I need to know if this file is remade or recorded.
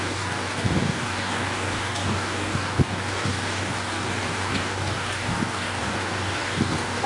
remade